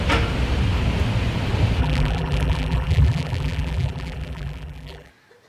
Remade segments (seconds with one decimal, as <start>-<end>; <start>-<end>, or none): 1.8-5.1

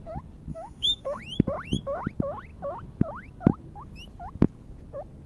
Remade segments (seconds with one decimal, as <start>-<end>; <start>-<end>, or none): 0.5-1.2

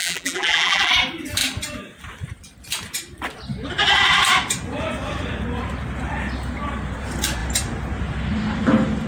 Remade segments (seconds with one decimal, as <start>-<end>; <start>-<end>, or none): 0.0-0.9

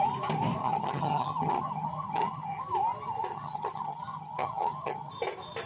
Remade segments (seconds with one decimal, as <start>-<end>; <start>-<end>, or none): 0.6-2.6; 3.3-5.1